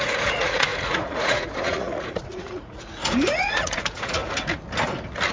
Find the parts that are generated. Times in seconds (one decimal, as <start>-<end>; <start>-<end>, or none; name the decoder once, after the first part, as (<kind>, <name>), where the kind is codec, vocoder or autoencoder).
0.0-4.2 (vocoder, Vocos)